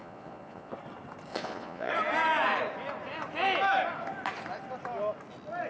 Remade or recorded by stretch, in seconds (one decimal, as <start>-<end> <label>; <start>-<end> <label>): 0.0-0.7 remade; 0.7-1.3 recorded; 1.3-1.9 remade; 1.9-5.7 recorded